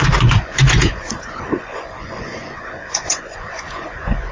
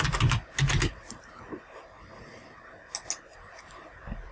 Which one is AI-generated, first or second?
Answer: first